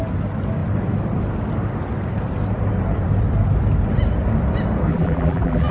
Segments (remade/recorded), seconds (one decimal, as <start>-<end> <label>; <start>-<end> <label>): 0.0-4.9 recorded; 4.9-5.7 remade